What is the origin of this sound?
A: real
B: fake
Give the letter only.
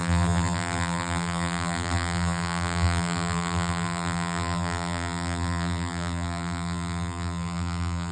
B